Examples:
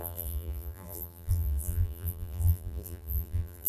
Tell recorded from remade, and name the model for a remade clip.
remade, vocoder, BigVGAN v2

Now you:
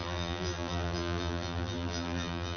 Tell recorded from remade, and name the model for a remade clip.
remade, vocoder, BigVGAN v2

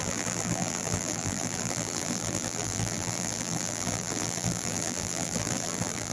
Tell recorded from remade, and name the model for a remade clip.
remade, vocoder, BigVGAN v2